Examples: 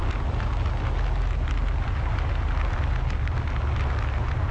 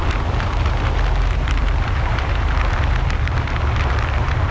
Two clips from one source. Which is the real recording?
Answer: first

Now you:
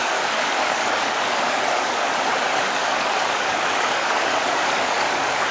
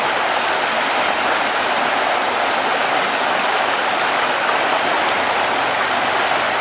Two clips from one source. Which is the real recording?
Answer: second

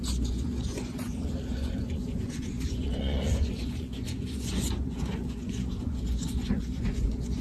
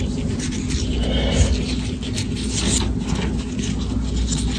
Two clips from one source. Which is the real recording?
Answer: second